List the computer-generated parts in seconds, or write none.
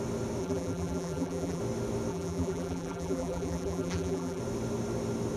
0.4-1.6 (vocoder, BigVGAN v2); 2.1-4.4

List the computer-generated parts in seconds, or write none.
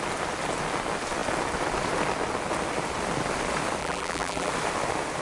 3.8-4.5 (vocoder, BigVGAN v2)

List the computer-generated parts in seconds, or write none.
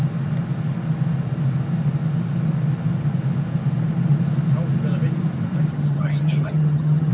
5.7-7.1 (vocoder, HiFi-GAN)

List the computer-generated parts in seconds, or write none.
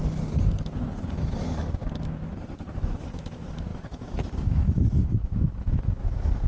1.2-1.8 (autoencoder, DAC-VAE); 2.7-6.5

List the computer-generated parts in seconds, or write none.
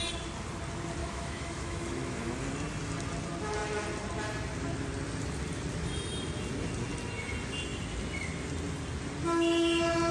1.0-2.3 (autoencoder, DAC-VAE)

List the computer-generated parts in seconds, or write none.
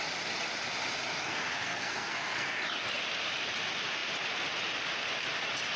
1.3-2.6 (codec, SNAC)